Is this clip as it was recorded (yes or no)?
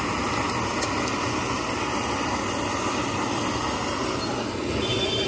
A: yes